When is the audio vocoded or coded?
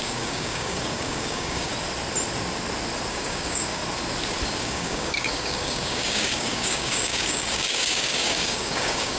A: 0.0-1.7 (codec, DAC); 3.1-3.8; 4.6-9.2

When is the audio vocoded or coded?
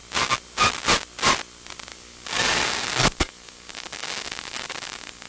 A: 1.9-5.3 (codec, DAC)